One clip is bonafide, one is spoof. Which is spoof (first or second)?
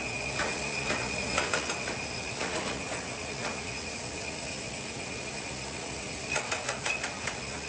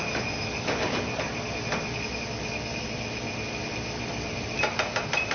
first